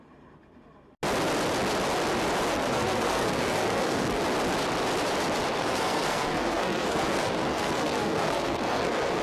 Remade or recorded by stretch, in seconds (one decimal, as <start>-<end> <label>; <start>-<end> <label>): 0.0-2.5 recorded; 2.5-4.2 remade; 4.2-5.6 recorded; 5.6-9.2 remade